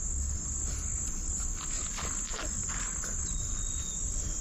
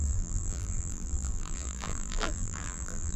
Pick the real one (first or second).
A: first